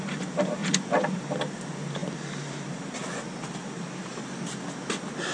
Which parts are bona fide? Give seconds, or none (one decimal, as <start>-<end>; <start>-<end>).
0.0-0.6; 1.2-3.6; 4.1-5.3